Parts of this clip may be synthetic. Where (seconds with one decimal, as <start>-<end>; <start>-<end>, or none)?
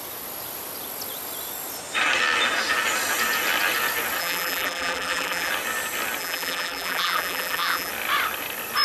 4.2-5.5; 6.2-7.9